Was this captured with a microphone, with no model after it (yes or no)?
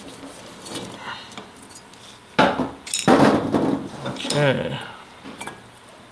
yes